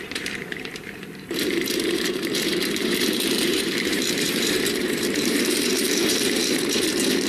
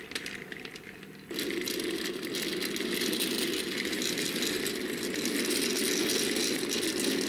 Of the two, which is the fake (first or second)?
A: first